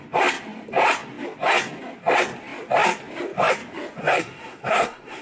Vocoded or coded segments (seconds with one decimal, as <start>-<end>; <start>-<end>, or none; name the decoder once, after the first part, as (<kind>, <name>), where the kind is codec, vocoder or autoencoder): 4.0-5.2 (codec, SNAC)